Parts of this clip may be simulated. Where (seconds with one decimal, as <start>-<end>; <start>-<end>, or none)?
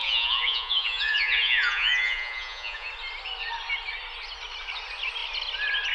0.0-2.9